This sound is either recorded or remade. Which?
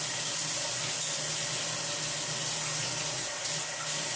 recorded